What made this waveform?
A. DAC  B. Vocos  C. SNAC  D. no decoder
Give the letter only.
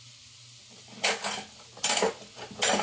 D